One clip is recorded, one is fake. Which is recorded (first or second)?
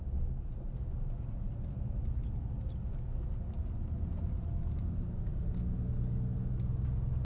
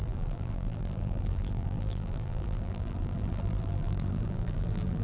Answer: first